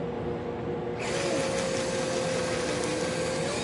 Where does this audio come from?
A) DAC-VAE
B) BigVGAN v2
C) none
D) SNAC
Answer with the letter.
C